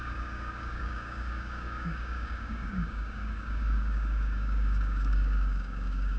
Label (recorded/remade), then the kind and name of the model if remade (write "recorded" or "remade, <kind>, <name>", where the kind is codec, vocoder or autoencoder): remade, codec, DAC